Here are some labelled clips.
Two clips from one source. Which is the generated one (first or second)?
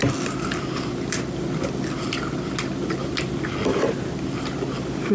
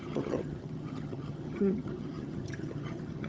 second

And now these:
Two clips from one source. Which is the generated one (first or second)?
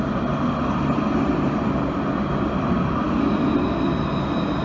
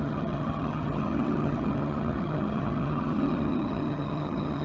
second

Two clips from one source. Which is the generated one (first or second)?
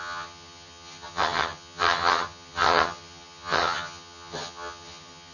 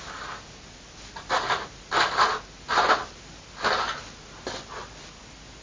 first